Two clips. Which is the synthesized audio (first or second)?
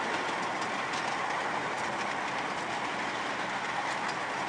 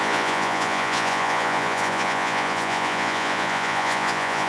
second